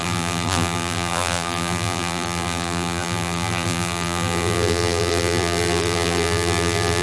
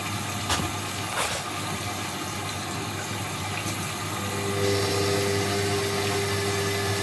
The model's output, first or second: first